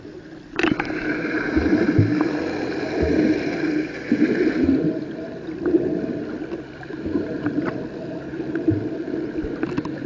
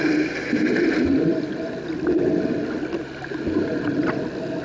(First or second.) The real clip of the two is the second